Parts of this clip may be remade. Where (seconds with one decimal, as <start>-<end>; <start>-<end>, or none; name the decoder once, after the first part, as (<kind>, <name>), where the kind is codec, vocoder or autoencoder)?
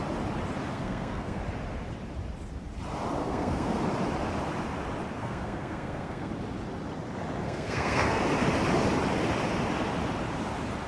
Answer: 0.7-1.4 (codec, SNAC); 3.2-3.8; 5.2-6.3; 7.4-8.2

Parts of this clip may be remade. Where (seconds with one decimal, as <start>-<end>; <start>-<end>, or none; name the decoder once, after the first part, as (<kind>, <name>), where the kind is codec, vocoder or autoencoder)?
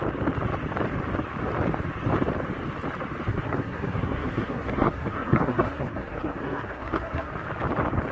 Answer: 3.3-7.3 (codec, SNAC)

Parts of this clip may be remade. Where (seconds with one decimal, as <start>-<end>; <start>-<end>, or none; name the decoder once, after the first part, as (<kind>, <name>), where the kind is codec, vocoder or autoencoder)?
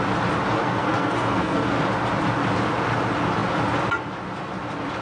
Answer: 0.6-1.8 (codec, SNAC)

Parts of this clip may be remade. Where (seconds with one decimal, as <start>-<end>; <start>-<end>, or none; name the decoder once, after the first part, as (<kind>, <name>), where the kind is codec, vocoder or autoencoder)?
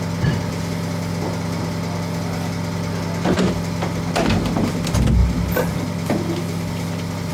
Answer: none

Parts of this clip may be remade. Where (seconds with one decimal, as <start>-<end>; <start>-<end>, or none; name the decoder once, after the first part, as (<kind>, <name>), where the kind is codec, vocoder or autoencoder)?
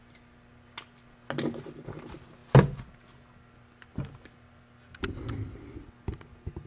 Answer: none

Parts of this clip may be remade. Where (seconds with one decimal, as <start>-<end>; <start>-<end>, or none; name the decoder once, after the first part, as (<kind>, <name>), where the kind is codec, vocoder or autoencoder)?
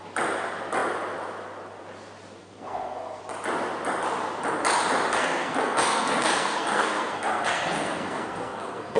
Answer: 2.4-3.2 (codec, SNAC); 5.1-9.0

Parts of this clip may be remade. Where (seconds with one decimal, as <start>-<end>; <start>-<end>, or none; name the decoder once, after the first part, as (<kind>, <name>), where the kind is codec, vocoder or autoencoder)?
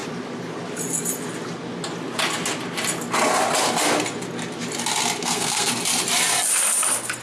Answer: 5.2-5.7 (codec, SNAC)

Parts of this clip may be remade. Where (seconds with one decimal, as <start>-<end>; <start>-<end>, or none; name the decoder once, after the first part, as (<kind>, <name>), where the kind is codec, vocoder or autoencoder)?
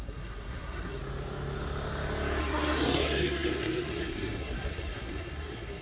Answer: 0.0-1.0 (codec, SNAC); 2.4-5.8